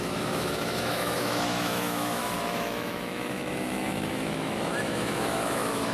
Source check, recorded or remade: remade